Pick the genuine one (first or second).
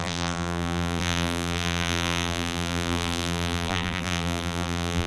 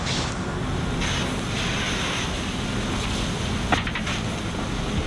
second